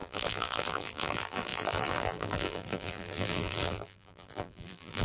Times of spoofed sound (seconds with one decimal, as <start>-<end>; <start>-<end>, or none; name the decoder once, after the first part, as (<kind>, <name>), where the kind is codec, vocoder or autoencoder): 0.0-5.0 (vocoder, BigVGAN v2)